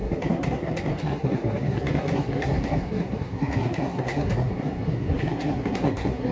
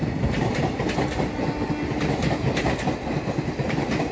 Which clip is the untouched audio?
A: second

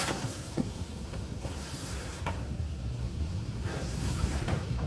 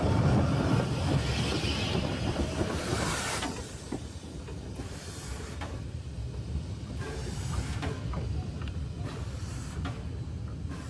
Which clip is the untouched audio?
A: second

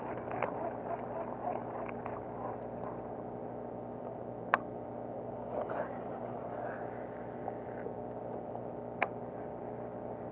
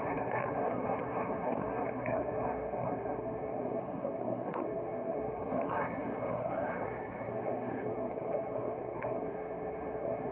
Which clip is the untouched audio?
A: first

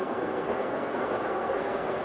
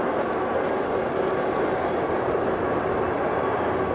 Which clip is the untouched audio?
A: second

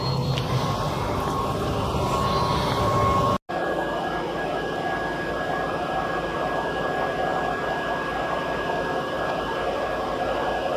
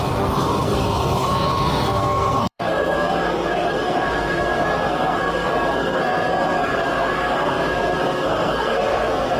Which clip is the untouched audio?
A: first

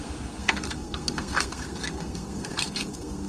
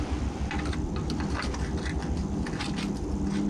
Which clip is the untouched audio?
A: second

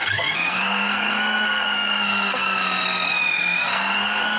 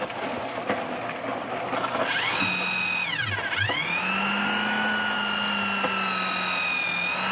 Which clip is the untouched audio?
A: second